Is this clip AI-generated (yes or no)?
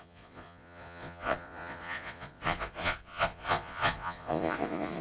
yes